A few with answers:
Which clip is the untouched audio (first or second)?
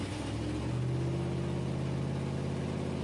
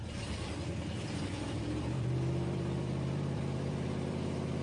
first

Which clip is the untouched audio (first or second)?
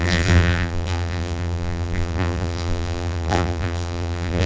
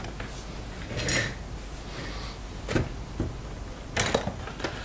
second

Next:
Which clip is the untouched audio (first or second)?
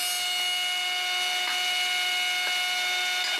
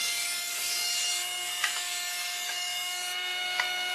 first